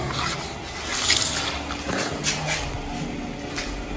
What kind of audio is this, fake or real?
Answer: real